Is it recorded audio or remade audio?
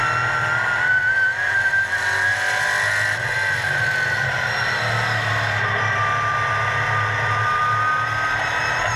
recorded